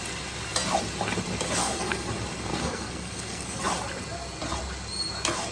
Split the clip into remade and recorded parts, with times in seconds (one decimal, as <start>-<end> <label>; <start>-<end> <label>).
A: 0.0-1.6 recorded; 1.6-2.1 remade; 2.1-2.5 recorded; 2.5-3.6 remade; 3.6-5.5 recorded